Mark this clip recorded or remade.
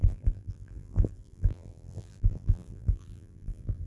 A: remade